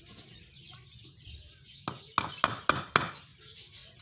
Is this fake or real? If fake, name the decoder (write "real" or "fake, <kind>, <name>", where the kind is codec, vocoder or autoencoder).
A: real